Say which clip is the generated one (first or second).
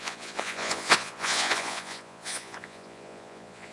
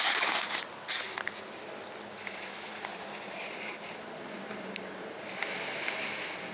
first